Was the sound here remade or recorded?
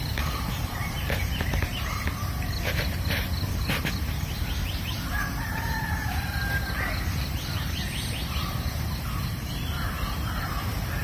remade